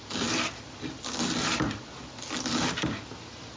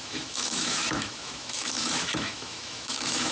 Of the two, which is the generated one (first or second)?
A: second